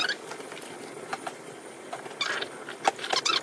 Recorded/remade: recorded